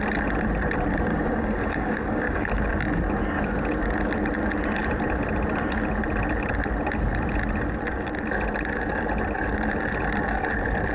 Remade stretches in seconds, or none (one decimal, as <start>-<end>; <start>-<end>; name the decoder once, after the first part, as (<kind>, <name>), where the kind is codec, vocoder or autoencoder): 1.1-2.5 (codec, DAC)